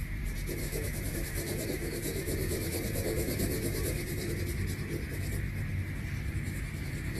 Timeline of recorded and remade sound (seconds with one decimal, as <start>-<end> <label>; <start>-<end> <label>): 0.0-0.6 recorded; 0.6-4.3 remade; 4.3-7.2 recorded